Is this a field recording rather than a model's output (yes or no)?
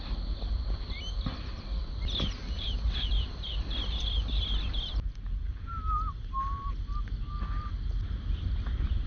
yes